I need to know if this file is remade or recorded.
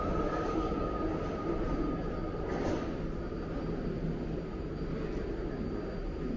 recorded